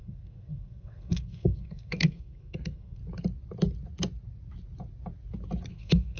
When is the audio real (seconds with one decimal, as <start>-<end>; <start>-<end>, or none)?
3.0-5.7